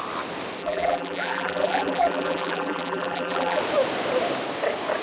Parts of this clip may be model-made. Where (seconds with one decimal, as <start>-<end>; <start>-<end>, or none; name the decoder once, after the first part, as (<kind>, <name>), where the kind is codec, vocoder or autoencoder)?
0.6-3.6 (vocoder, BigVGAN v2)